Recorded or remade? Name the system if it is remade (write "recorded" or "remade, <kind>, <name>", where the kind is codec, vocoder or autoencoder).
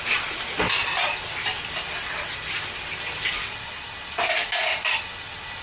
recorded